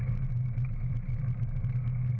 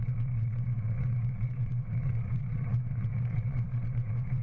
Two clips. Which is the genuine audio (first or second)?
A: first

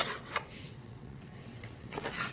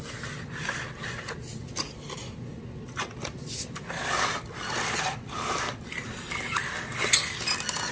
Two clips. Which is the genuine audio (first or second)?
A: second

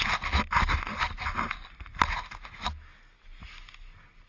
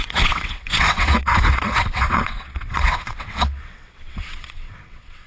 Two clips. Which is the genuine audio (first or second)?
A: first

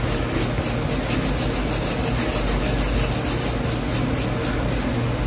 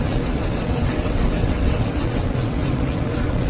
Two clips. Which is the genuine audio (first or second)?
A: first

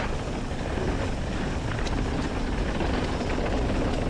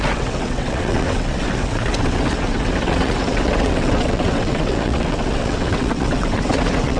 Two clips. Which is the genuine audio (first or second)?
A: first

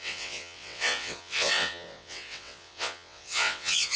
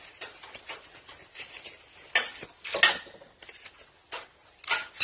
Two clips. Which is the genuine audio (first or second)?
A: second